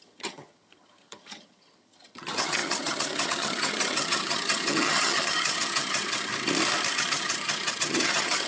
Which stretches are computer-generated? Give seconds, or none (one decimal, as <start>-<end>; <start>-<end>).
0.0-6.3; 6.9-8.5